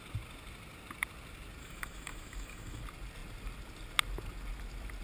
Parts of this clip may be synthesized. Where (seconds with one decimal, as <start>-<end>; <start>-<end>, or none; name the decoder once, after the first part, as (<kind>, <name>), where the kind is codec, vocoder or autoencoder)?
1.6-2.8 (autoencoder, DAC-VAE)